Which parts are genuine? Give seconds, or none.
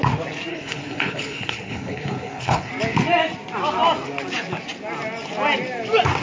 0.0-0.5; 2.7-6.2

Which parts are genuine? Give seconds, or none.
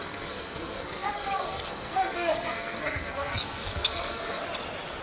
4.4-5.0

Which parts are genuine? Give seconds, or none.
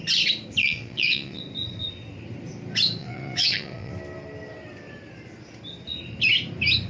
0.0-0.6; 1.4-3.0; 3.9-6.9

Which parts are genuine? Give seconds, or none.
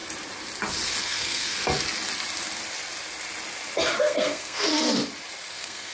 0.0-1.0; 1.6-4.0; 4.7-5.5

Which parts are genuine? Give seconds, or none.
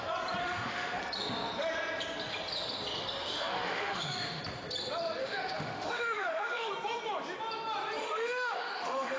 0.0-0.4; 1.0-3.2; 4.4-5.2; 6.7-8.0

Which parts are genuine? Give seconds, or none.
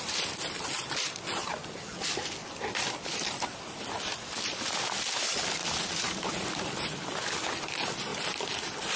0.0-2.4; 3.8-5.6; 6.3-8.1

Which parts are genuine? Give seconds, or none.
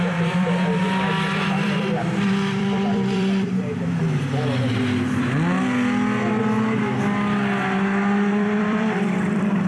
4.0-8.3